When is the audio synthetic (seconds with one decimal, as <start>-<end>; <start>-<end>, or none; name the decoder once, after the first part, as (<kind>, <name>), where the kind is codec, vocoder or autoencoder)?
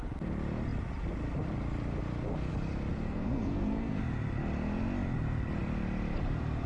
2.9-4.0 (codec, SNAC)